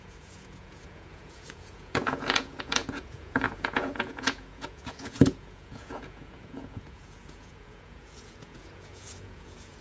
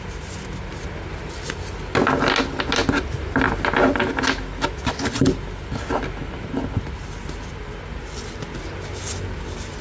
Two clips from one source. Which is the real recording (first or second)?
second